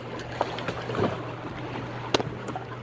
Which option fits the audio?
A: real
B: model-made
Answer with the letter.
A